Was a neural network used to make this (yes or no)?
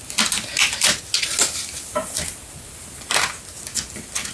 no